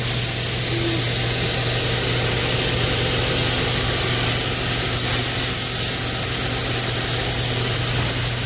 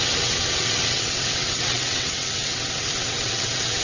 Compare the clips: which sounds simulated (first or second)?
second